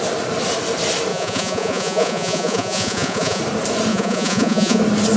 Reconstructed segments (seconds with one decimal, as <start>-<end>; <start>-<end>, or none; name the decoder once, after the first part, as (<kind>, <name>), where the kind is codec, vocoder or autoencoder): 1.1-3.4 (vocoder, Vocos); 3.9-4.8